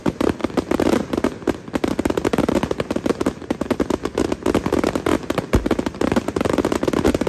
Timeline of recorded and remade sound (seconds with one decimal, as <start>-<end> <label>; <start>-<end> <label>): 0.0-7.3 recorded